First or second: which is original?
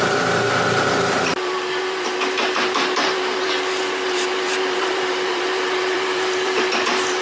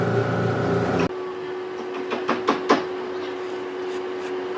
second